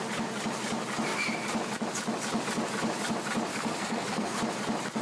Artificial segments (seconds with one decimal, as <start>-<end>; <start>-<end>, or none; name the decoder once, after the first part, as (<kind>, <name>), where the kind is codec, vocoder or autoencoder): 3.5-4.4 (codec, SNAC)